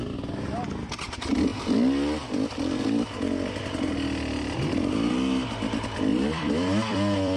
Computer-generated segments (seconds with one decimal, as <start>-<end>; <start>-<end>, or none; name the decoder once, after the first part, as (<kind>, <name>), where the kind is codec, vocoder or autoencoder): 6.1-7.4 (vocoder, BigVGAN v2)